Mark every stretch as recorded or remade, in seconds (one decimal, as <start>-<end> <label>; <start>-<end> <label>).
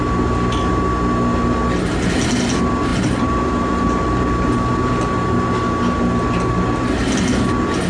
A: 0.0-2.9 recorded; 2.9-4.0 remade; 4.0-7.9 recorded